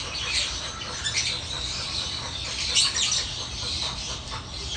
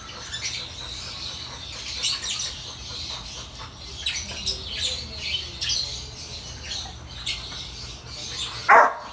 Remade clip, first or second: first